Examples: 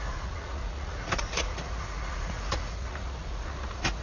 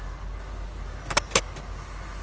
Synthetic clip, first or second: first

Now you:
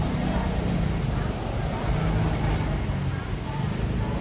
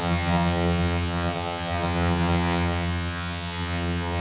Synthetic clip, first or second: second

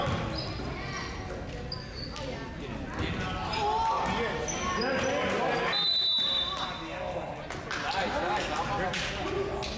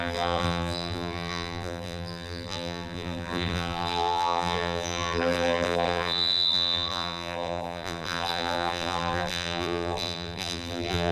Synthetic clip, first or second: second